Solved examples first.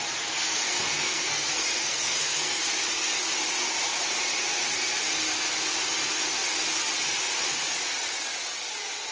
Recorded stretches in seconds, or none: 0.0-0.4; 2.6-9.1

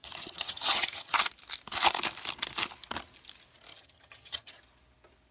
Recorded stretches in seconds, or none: 1.2-3.7; 4.6-5.3

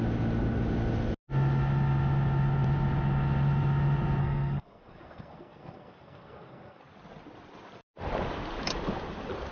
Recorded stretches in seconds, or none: 0.0-4.2; 6.8-9.5

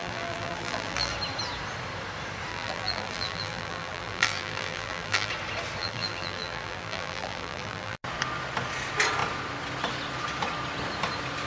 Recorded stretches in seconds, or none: 1.1-2.5; 5.3-5.8; 8.0-11.5

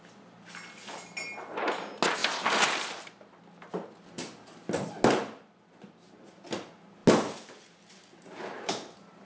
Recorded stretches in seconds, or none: 0.0-9.2

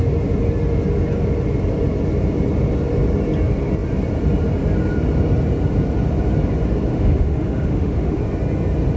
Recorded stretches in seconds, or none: 0.0-6.9; 8.2-9.0

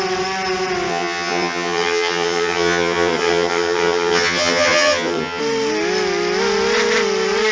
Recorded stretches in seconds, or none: 0.0-0.9; 5.4-7.5